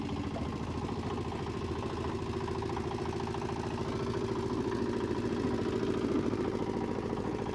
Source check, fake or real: real